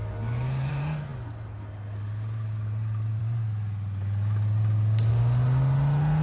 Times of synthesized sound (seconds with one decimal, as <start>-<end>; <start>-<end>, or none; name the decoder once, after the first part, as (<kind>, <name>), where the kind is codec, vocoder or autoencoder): none